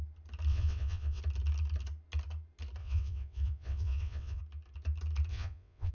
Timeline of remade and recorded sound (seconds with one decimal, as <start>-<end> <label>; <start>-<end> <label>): 0.0-0.5 recorded; 0.5-1.2 remade; 1.2-2.8 recorded; 2.8-4.4 remade; 4.4-5.3 recorded; 5.3-5.9 remade